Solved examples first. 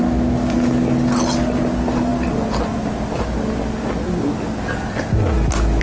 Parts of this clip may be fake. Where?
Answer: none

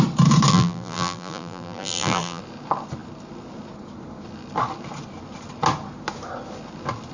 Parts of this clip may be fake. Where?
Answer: 0.5-2.4 (vocoder, BigVGAN v2)

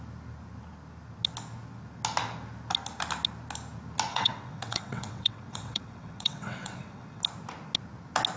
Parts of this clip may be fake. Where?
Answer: 4.1-7.2 (vocoder, WaveNeXt)

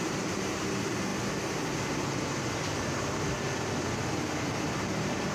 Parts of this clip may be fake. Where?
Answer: 0.0-1.1 (vocoder, BigVGAN v2); 4.3-5.3